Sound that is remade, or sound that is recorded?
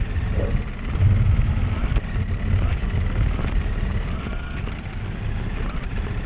recorded